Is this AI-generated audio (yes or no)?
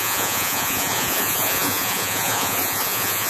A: yes